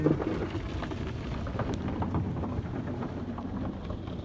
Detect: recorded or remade recorded